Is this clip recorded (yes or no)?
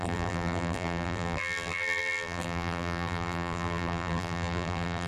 no